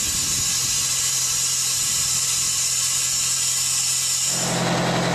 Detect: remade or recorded recorded